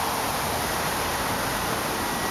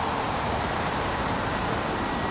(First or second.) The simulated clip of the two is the second